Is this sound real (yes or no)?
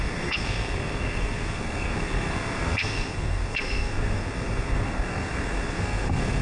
no